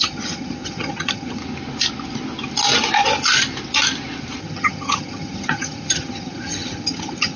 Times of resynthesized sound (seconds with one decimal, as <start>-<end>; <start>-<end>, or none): 0.0-1.4; 4.4-7.4